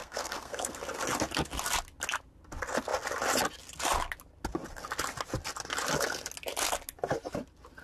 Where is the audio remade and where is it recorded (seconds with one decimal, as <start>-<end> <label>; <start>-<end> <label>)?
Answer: 0.0-0.8 remade; 0.8-7.8 recorded